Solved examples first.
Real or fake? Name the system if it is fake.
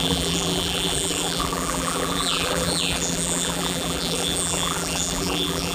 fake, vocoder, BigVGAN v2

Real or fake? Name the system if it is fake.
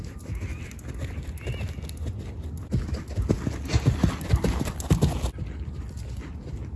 real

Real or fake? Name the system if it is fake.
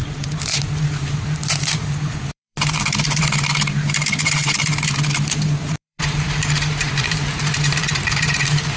fake, vocoder, BigVGAN v2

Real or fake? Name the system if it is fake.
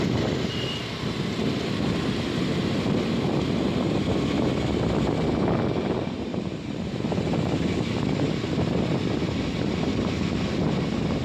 real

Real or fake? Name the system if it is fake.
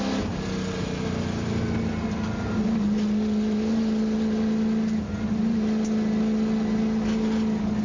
real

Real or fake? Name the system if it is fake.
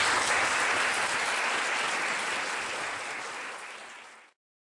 fake, vocoder, BigVGAN v2